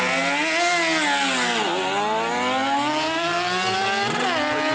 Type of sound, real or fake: real